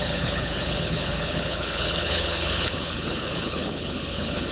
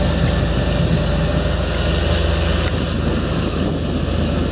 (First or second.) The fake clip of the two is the first